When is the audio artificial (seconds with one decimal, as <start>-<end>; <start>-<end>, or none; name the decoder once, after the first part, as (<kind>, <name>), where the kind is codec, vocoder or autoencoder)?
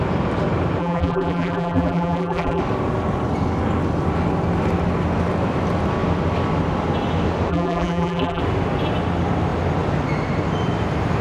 0.8-2.6 (vocoder, BigVGAN v2); 7.5-8.4